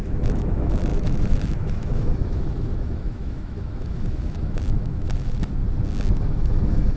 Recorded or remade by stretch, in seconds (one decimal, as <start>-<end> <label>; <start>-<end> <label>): 0.0-5.6 remade; 5.6-6.2 recorded; 6.2-7.0 remade